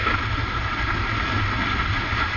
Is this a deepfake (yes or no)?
no